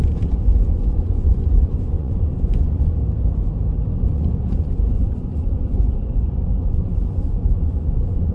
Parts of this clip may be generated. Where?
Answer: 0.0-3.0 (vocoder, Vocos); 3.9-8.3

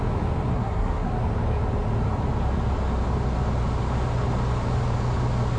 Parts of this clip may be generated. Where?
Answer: 0.5-1.1 (codec, SNAC)

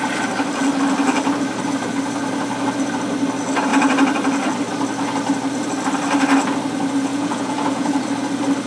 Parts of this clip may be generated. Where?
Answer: 7.1-8.0 (vocoder, Vocos)

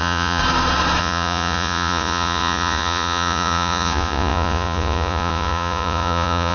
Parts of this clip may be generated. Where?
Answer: 0.0-0.4 (vocoder, Vocos); 1.0-6.5

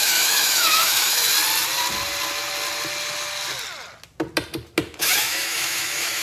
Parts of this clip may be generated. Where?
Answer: 0.0-1.3 (autoencoder, DAC-VAE); 5.0-6.2

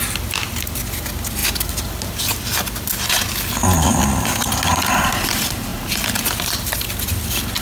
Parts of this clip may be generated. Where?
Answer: none

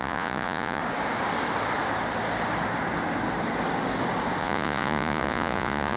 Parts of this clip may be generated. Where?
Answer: 0.0-0.8 (vocoder, Vocos); 4.4-6.0

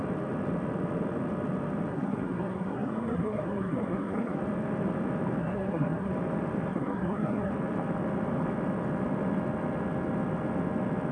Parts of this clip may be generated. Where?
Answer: 1.9-4.4 (codec, SNAC); 5.4-6.1; 6.7-7.5